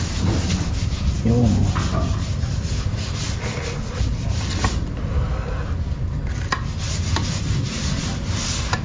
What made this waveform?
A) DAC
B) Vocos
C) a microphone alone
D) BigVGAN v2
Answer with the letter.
C